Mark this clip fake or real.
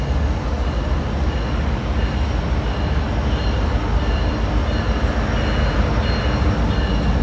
real